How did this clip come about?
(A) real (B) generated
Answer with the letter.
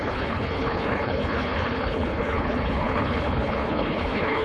B